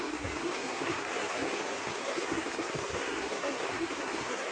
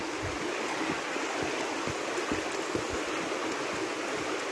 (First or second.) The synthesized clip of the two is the first